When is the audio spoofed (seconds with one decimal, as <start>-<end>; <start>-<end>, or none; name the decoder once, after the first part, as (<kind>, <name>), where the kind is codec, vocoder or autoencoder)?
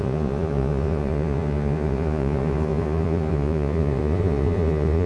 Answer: 0.0-5.1 (vocoder, Vocos)